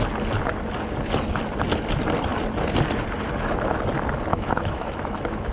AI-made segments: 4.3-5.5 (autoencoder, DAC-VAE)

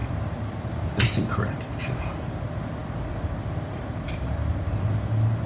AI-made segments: 0.0-2.0 (vocoder, BigVGAN v2); 2.8-4.9

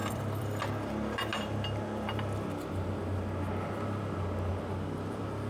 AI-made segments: 0.0-0.7 (vocoder, BigVGAN v2)

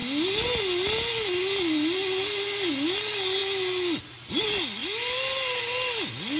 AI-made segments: none

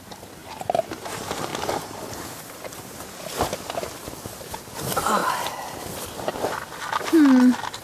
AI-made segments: none

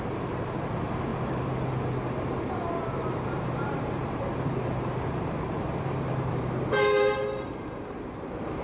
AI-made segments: 0.0-1.1 (vocoder, BigVGAN v2); 1.7-8.6

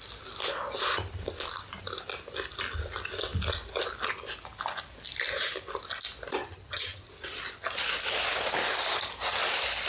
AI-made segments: 6.4-7.1 (vocoder, HiFi-GAN)

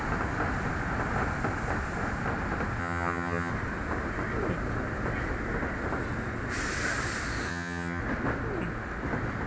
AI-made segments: 2.8-3.5 (vocoder, HiFi-GAN); 7.5-8.0